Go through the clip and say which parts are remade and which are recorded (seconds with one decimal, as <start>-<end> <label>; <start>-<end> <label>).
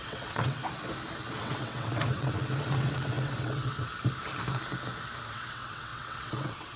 0.0-0.6 remade; 0.6-1.4 recorded; 1.4-3.9 remade; 3.9-5.3 recorded; 5.3-6.8 remade